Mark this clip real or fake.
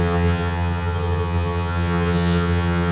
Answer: fake